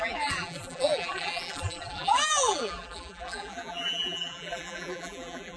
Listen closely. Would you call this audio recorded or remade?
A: remade